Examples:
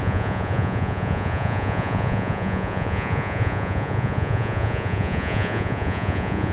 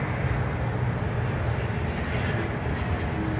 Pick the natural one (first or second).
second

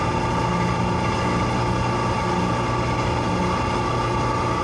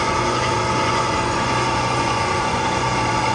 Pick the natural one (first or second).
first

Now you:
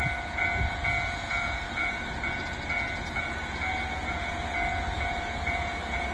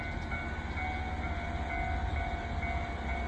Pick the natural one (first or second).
second